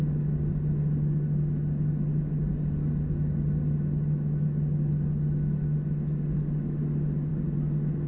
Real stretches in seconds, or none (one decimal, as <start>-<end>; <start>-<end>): 0.0-8.1